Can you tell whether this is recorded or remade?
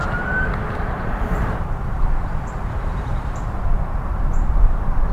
remade